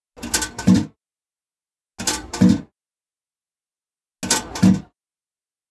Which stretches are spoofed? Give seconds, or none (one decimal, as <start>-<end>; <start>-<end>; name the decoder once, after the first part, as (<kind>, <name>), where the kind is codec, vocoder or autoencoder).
none